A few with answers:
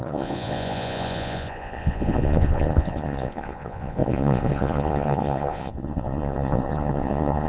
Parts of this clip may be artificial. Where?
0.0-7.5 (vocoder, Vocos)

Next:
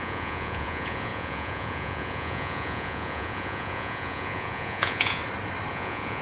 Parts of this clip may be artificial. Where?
0.0-5.2 (vocoder, Vocos); 5.7-6.2

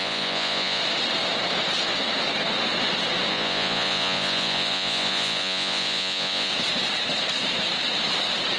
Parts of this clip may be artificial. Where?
0.0-0.8 (vocoder, Vocos); 3.3-6.5

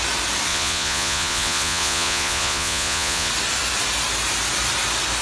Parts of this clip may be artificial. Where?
0.5-3.3 (vocoder, Vocos)